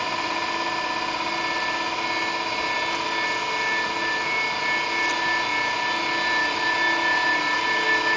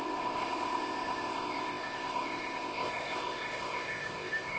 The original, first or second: first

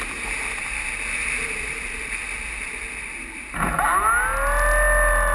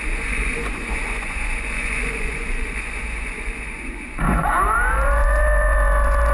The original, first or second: first